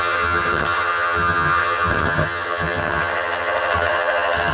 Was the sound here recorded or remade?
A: remade